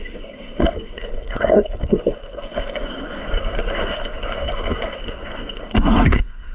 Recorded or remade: remade